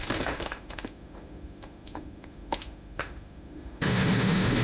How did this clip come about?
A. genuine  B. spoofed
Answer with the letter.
B